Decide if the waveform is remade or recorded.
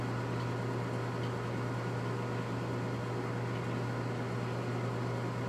recorded